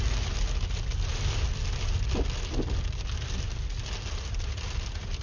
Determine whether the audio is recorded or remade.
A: recorded